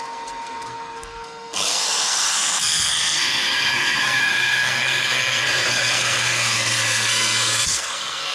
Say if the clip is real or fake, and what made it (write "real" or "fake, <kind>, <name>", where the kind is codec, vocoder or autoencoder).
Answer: fake, codec, SNAC